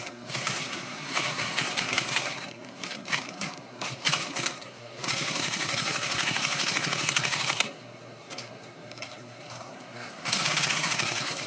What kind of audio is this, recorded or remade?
remade